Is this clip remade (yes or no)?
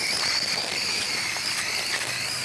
no